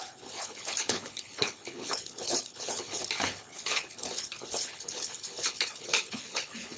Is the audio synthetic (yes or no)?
yes